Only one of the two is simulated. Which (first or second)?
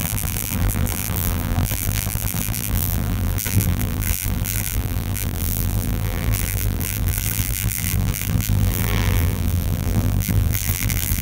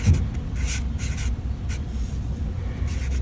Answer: first